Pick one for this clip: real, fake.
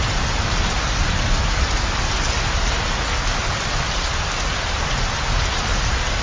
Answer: real